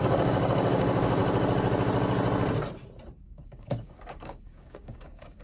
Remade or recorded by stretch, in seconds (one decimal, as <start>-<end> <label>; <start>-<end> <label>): 0.0-1.2 remade; 1.2-3.2 recorded; 3.2-5.4 remade